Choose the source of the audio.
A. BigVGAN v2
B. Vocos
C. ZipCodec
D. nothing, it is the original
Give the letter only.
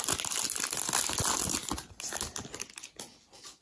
D